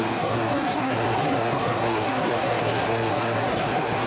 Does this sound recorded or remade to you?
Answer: remade